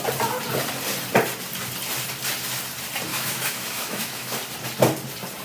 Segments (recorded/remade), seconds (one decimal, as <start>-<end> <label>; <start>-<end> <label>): 0.0-3.1 recorded; 3.1-4.4 remade; 4.4-5.4 recorded